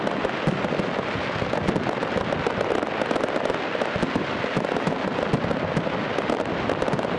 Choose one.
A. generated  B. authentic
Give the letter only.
B